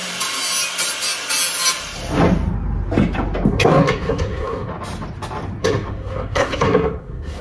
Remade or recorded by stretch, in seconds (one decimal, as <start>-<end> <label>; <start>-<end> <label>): 0.0-3.5 recorded; 3.5-4.7 remade; 4.7-5.6 recorded; 5.6-7.4 remade